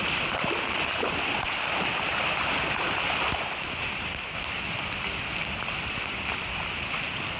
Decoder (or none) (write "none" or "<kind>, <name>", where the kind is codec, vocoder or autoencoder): vocoder, BigVGAN v2